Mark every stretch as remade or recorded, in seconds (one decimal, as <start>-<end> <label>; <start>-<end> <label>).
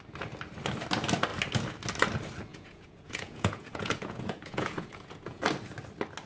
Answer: 0.0-2.5 recorded; 2.5-5.4 remade; 5.4-6.3 recorded